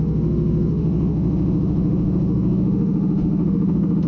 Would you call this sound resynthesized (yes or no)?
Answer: yes